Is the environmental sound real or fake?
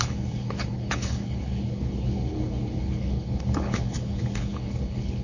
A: fake